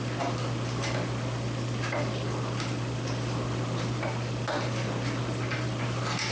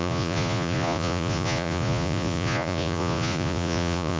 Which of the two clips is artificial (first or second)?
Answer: second